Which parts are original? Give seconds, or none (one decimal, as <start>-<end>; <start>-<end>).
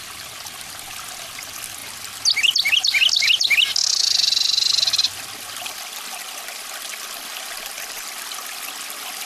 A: 0.0-9.2